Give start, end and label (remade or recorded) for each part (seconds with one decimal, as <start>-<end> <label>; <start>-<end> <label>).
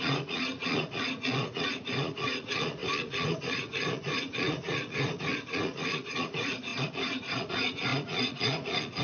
0.0-9.0 remade